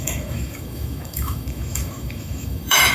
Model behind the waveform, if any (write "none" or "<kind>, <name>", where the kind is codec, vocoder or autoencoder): autoencoder, DAC-VAE